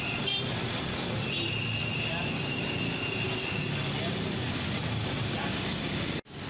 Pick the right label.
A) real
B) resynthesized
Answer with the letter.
A